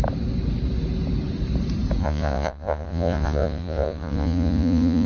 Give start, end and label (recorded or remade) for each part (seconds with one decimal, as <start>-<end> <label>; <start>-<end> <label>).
0.0-2.0 recorded; 2.0-5.1 remade